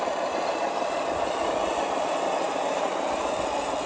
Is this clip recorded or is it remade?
recorded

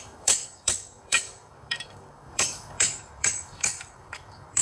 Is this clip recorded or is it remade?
remade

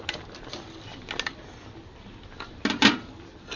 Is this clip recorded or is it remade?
recorded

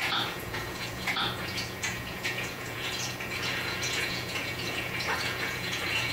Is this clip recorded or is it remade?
remade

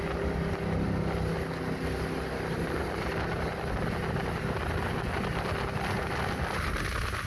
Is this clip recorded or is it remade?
recorded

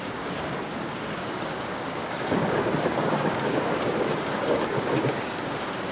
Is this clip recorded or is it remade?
remade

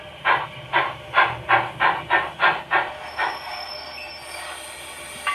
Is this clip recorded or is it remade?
recorded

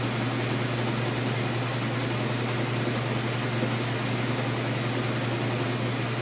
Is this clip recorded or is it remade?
recorded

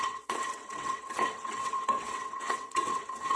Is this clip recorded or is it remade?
remade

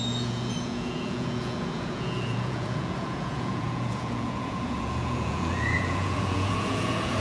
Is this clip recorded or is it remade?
remade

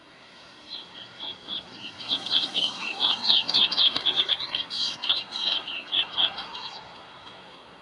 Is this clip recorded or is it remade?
remade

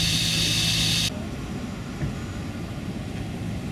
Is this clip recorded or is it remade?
recorded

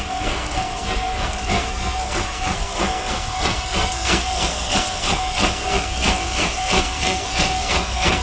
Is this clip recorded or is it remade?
remade